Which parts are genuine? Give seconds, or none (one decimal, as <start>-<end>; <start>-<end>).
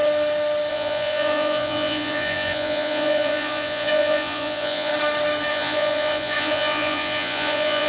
0.0-0.7; 4.9-5.5